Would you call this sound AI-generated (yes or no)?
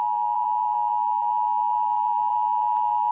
yes